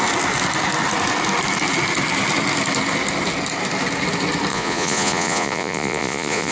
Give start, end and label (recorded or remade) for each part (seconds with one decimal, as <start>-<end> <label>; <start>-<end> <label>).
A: 0.0-4.5 recorded; 4.5-6.5 remade